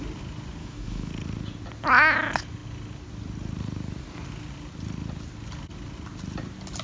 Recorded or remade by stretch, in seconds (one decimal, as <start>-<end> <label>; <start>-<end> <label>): 0.0-0.6 recorded; 0.6-1.1 remade; 1.1-6.8 recorded